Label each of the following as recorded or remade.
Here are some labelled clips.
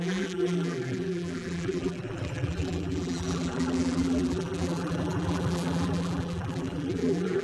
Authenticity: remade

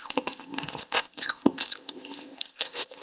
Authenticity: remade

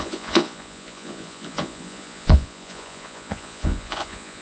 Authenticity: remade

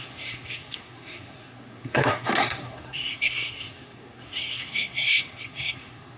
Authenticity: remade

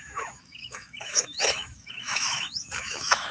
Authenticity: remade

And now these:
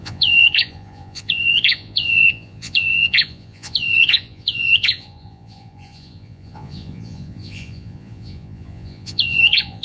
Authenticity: remade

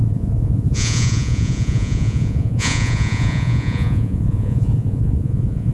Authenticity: remade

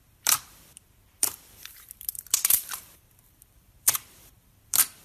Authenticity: remade